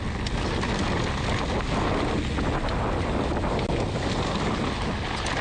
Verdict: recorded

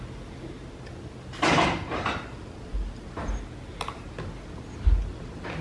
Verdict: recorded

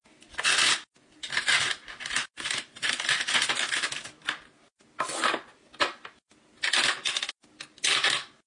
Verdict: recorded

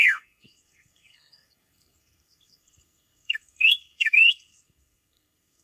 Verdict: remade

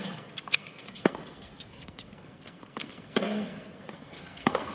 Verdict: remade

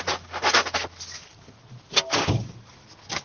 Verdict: recorded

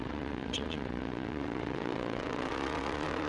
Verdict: remade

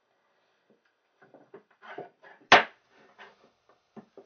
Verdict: recorded